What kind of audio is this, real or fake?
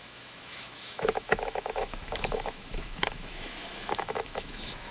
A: fake